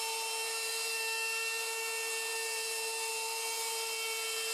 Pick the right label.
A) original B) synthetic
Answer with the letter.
A